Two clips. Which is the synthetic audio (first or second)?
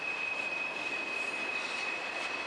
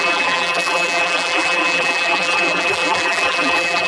second